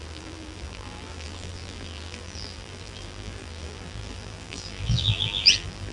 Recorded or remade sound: remade